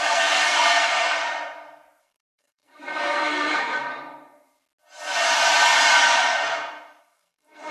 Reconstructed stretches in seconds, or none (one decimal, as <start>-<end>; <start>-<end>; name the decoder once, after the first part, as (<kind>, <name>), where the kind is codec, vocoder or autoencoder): 0.0-1.2 (codec, SNAC); 2.0-3.9; 7.0-7.7